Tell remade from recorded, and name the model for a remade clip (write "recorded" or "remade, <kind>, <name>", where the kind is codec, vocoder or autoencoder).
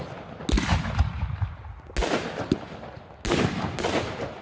recorded